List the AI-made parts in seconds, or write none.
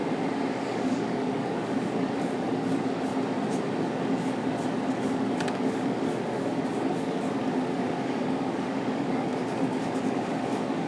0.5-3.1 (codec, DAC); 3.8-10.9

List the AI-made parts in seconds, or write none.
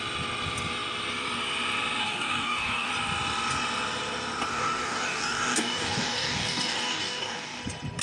2.0-2.9 (codec, DAC); 4.5-7.6